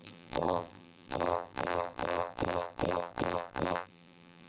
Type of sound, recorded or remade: remade